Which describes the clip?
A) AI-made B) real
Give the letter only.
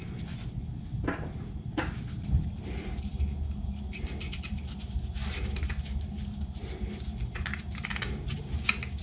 B